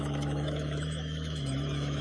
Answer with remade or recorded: remade